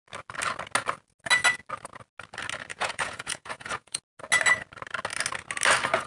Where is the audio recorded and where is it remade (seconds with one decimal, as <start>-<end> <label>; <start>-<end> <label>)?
0.0-2.7 recorded; 2.7-4.0 remade; 4.0-6.1 recorded